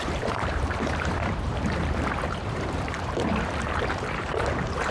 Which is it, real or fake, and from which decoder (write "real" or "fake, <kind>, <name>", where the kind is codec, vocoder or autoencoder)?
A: fake, vocoder, BigVGAN v2